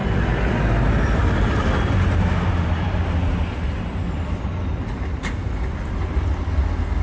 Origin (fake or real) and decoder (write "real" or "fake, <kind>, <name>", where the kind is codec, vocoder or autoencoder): real